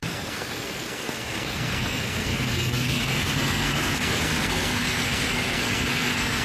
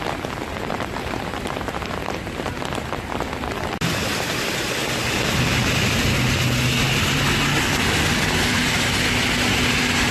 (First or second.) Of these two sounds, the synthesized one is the first